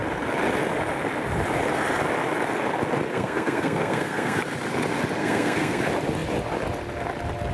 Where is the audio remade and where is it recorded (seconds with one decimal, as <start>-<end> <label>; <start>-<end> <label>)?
0.0-3.1 recorded; 3.1-4.4 remade; 4.4-5.2 recorded; 5.2-5.8 remade; 5.8-7.5 recorded